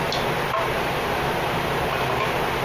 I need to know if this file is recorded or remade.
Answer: recorded